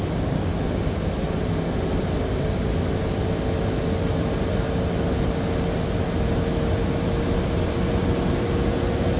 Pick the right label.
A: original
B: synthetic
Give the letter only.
A